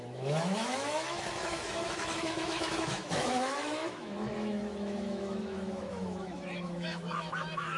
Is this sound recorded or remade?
remade